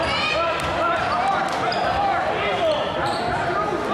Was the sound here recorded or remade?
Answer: remade